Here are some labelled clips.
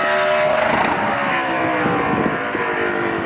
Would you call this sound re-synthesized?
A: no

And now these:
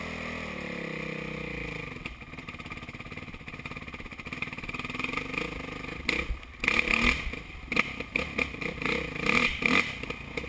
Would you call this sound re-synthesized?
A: no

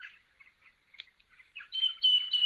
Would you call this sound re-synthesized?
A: yes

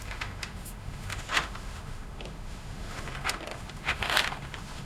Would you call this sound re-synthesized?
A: yes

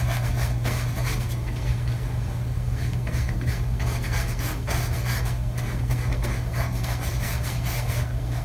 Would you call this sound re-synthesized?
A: yes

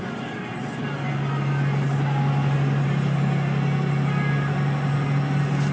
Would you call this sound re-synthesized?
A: no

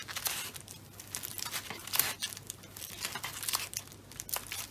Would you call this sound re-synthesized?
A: no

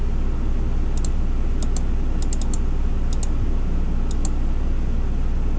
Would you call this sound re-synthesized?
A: no